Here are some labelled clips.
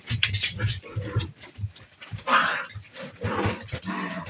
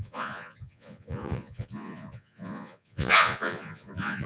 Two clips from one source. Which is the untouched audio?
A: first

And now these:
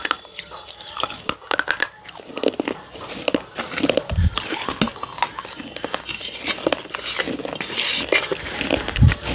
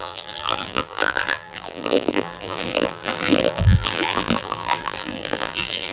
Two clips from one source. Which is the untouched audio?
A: first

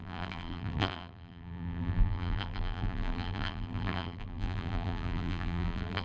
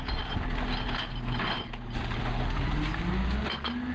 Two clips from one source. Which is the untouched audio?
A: second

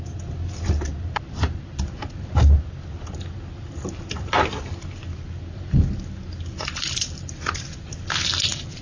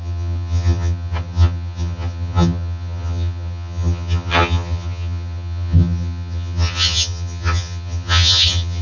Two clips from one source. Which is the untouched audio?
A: first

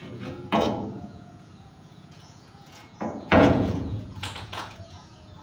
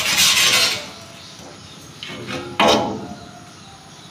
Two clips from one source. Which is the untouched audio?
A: second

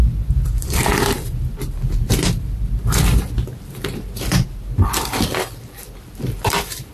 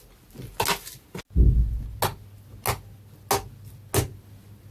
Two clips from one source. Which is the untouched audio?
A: second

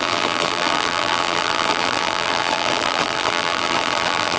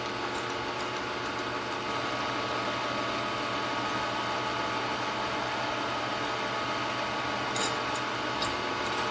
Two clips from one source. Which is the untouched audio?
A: second